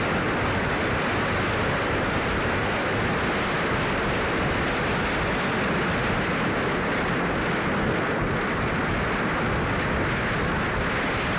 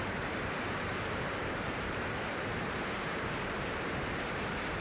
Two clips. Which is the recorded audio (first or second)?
first